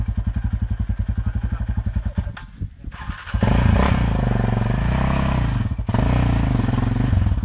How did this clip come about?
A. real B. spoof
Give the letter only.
A